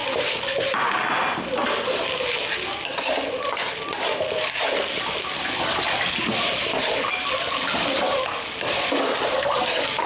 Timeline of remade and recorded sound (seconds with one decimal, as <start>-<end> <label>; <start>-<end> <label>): 0.0-10.1 recorded